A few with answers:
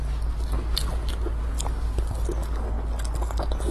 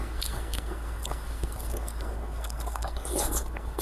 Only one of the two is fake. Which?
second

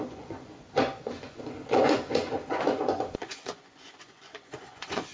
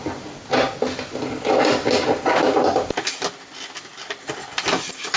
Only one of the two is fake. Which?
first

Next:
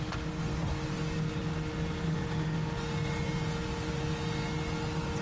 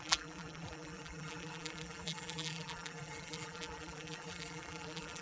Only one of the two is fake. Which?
second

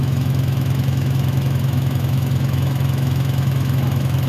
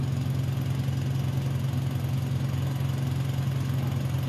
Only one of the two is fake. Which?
first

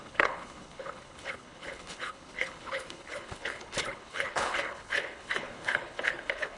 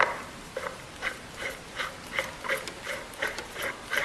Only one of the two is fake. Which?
first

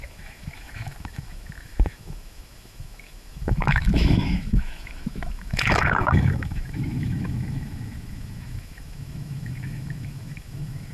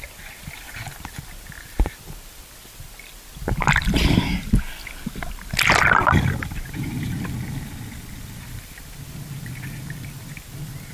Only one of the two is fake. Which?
first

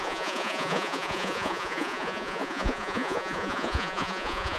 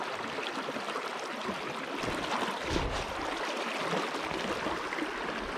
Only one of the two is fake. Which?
first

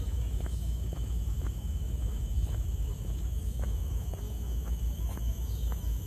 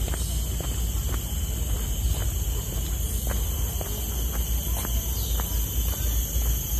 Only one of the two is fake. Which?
first